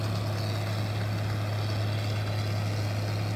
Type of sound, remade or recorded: recorded